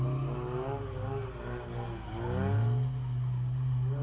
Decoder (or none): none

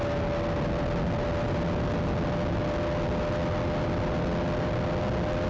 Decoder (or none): none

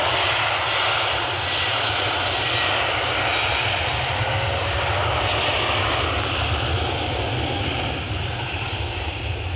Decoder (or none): none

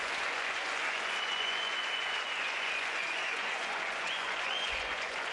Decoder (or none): vocoder, Vocos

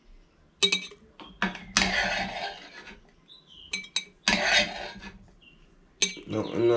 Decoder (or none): none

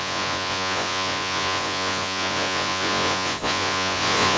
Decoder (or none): vocoder, Vocos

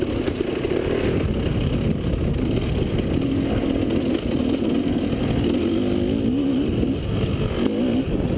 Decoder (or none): none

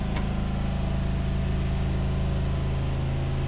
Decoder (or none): none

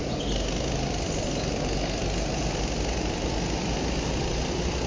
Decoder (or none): none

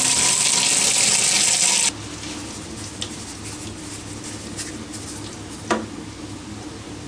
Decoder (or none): none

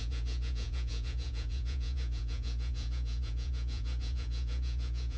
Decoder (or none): vocoder, Vocos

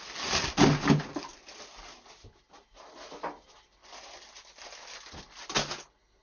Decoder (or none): none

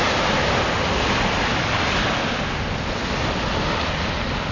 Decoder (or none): none